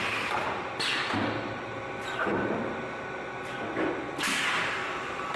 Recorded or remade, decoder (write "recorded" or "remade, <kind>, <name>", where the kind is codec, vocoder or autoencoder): recorded